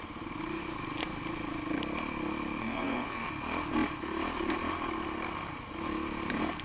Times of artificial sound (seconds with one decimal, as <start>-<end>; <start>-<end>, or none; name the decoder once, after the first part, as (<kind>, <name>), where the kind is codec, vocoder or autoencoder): 2.6-3.3 (codec, SNAC)